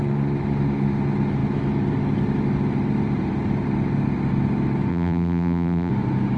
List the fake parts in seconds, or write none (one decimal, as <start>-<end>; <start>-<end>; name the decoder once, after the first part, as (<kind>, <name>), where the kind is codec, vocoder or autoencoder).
4.9-5.9 (vocoder, BigVGAN v2)